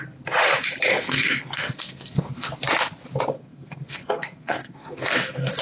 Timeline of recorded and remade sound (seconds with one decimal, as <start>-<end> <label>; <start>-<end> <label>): 0.0-0.9 recorded; 0.9-2.5 remade; 2.5-3.3 recorded; 3.3-5.6 remade